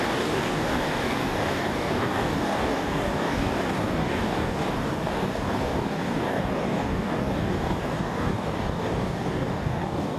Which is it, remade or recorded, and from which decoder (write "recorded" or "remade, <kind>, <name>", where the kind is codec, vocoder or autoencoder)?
remade, codec, DAC